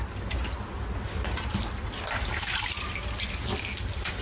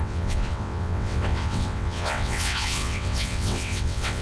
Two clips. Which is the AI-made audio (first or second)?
second